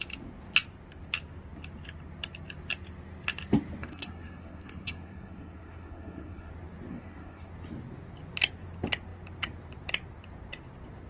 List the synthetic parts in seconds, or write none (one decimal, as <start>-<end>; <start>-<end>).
3.9-6.5; 6.9-7.5